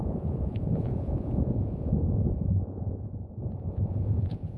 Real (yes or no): no